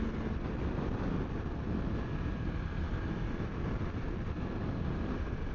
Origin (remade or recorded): recorded